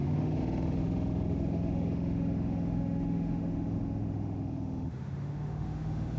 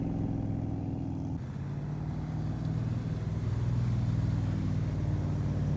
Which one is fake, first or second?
first